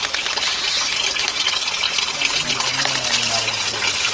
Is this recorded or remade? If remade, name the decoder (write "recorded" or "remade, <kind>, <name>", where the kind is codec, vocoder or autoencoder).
recorded